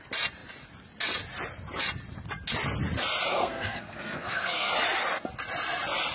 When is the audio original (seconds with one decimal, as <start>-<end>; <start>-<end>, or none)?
0.0-3.3; 4.7-6.1